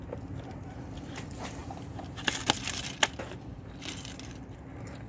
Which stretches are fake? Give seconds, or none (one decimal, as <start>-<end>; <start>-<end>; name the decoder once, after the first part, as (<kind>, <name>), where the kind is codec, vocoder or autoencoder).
1.6-3.9 (vocoder, BigVGAN v2)